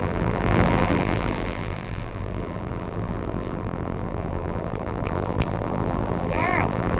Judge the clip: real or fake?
fake